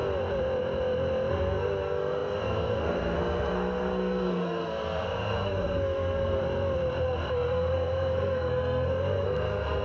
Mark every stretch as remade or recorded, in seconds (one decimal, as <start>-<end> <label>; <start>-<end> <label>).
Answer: 0.0-1.3 recorded; 1.3-6.4 remade; 6.4-7.3 recorded; 7.3-9.8 remade